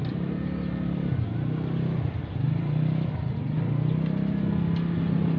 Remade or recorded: recorded